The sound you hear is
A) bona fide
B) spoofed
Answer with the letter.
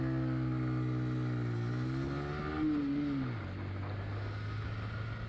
A